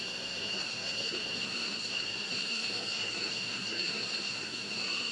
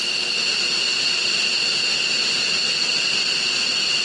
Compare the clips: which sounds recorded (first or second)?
second